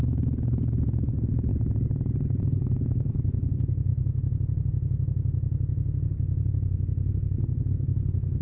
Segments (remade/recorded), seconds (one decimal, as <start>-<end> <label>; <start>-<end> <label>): 0.0-1.5 remade; 1.5-2.4 recorded; 2.4-3.9 remade; 3.9-7.7 recorded; 7.7-8.4 remade